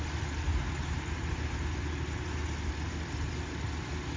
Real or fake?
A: real